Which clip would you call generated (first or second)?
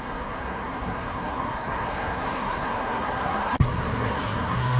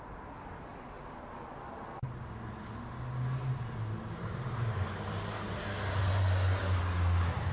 first